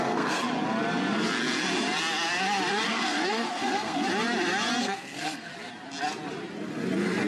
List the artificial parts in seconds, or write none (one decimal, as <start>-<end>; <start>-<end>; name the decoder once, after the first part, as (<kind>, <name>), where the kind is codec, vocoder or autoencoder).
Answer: 0.0-0.4 (codec, SNAC); 2.9-4.1; 4.8-5.5